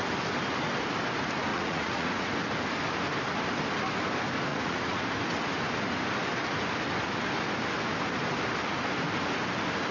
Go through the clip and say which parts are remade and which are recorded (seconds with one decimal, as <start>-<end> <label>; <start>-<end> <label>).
0.0-1.5 recorded; 1.5-2.3 remade; 2.3-4.5 recorded; 4.5-5.0 remade; 5.0-9.9 recorded